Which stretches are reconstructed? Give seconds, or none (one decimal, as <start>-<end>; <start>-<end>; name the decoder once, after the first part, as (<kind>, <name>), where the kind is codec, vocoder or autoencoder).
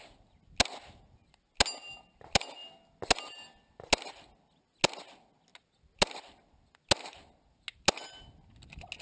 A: none